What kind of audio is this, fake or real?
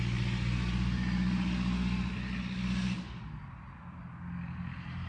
real